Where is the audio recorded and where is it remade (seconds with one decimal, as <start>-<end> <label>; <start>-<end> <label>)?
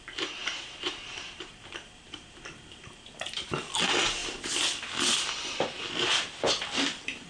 0.0-4.2 remade; 4.2-6.5 recorded; 6.5-7.3 remade